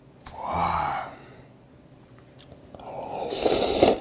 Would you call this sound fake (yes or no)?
no